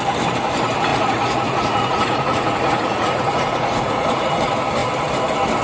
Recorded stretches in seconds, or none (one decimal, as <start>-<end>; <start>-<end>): 0.0-0.9; 4.3-5.6